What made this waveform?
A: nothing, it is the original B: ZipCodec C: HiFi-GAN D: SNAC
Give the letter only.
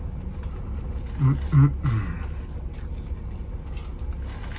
A